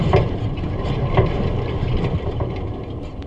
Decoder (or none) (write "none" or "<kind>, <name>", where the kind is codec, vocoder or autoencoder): vocoder, BigVGAN v2